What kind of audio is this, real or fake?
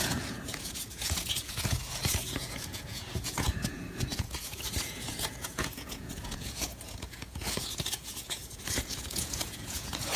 fake